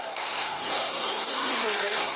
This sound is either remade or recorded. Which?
remade